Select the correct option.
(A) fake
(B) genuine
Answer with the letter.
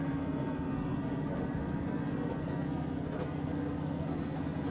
A